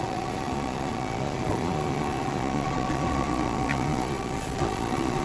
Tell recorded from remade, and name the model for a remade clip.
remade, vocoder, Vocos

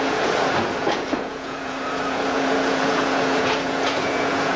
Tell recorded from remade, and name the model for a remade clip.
remade, vocoder, Vocos